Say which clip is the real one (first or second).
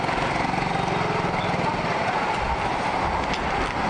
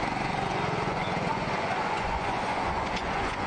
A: first